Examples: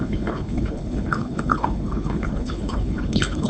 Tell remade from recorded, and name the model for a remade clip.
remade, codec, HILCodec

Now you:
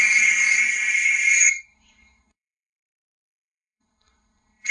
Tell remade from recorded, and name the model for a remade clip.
remade, codec, SNAC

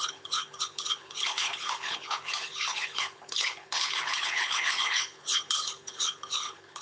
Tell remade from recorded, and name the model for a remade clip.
remade, codec, HILCodec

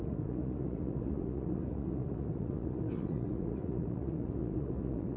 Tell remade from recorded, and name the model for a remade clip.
remade, vocoder, Vocos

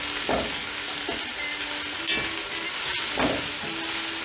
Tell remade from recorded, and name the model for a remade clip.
recorded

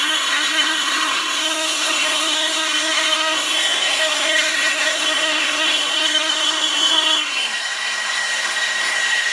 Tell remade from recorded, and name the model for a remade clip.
remade, codec, SNAC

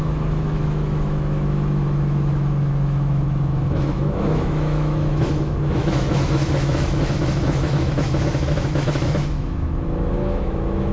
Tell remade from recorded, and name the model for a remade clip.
remade, autoencoder, DAC-VAE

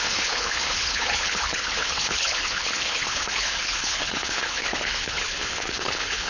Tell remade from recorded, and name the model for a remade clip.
remade, codec, HILCodec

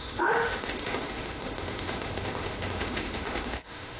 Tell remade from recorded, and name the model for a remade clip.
remade, autoencoder, DAC-VAE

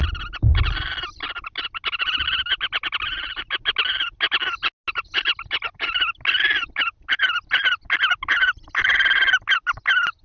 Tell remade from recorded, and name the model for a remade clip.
recorded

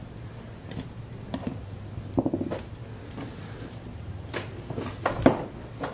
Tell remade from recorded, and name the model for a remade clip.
recorded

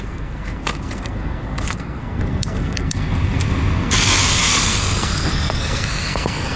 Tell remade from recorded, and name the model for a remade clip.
remade, codec, SNAC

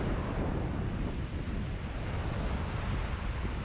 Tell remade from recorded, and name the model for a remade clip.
recorded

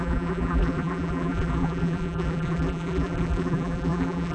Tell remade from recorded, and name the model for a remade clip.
remade, vocoder, BigVGAN v2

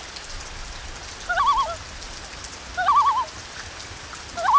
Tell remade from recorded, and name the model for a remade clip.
recorded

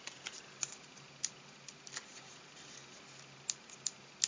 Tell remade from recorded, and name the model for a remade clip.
recorded